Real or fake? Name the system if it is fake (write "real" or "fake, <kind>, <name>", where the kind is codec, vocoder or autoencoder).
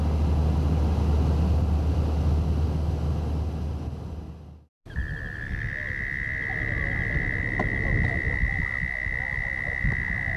real